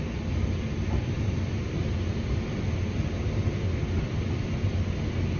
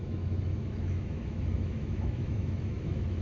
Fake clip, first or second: second